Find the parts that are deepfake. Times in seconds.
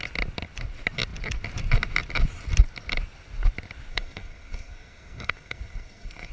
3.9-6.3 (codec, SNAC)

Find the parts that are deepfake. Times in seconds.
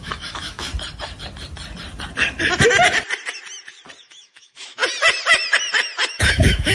0.0-0.7 (autoencoder, DAC-VAE); 4.0-4.8; 6.1-6.7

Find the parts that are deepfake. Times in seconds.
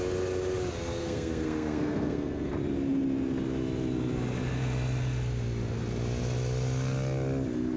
1.0-2.5 (codec, SNAC)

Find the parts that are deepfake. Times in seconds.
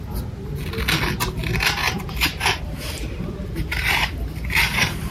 1.8-5.1 (vocoder, BigVGAN v2)